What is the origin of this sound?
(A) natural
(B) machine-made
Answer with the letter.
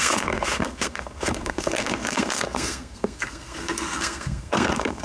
B